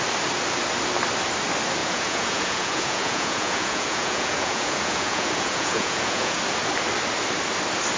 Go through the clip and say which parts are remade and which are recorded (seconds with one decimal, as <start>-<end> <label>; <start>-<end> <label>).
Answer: 0.0-1.8 recorded; 1.8-6.4 remade; 6.4-8.0 recorded